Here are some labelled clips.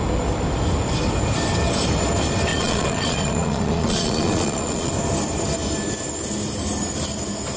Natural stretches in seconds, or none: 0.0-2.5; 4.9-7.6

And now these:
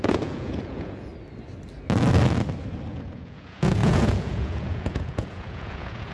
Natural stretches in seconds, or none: 1.1-2.9

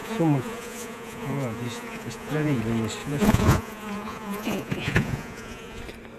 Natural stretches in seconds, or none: 2.6-3.0; 5.8-6.2